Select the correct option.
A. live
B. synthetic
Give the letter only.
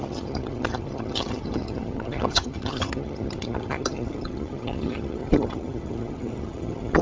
B